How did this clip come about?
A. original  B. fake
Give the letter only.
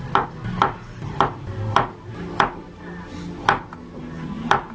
A